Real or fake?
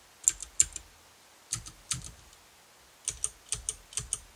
real